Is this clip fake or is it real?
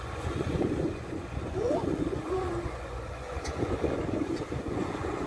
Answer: fake